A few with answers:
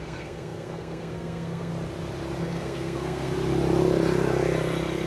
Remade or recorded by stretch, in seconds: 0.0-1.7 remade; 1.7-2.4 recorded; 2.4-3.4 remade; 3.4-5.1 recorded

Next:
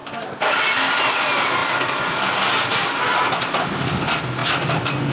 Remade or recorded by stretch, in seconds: 0.0-5.1 recorded